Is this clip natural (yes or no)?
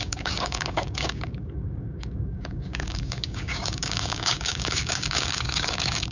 no